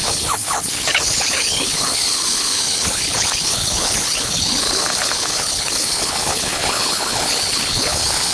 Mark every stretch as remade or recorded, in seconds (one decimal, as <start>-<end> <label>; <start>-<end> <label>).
0.0-8.3 remade